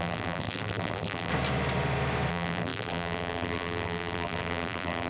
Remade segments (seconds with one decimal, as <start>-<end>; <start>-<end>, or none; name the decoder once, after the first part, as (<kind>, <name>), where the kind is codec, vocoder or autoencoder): 0.0-1.3 (vocoder, BigVGAN v2); 2.3-5.1